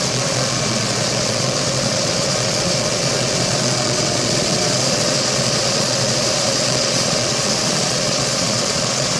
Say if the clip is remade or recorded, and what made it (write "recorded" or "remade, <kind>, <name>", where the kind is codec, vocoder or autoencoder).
remade, vocoder, Vocos